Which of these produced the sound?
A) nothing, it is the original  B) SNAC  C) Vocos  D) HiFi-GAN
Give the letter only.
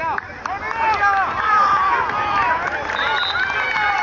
A